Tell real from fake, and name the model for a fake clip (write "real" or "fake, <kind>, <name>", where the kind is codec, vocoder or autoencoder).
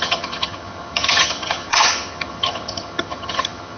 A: fake, vocoder, HiFi-GAN